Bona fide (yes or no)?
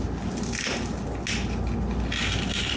yes